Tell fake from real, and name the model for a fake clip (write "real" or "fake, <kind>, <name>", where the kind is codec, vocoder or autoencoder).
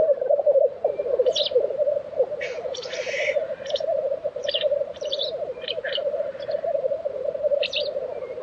fake, vocoder, BigVGAN v2